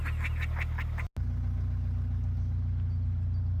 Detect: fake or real real